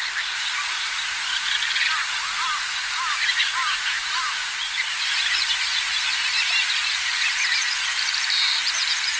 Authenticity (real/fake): fake